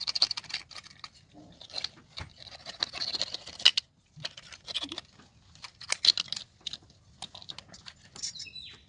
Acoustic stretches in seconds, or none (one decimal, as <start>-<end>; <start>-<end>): 0.0-8.9

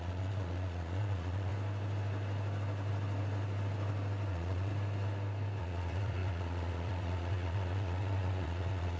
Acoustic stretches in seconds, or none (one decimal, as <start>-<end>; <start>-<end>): 1.5-4.3; 4.7-5.6

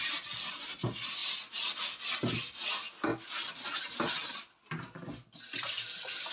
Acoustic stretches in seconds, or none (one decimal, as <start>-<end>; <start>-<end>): 0.0-6.3

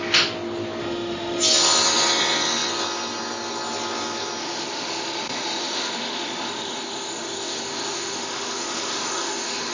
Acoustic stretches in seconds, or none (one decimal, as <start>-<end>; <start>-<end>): 0.0-0.8; 1.4-4.4